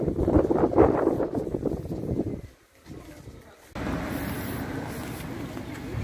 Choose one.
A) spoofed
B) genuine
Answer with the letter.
B